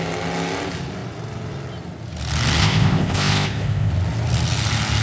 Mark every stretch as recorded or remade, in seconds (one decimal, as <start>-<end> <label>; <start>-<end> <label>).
0.0-2.6 recorded; 2.6-3.9 remade; 3.9-5.0 recorded